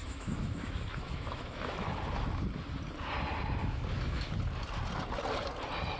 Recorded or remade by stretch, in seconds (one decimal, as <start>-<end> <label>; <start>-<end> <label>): 0.0-1.9 remade; 1.9-3.6 recorded; 3.6-4.4 remade; 4.4-6.0 recorded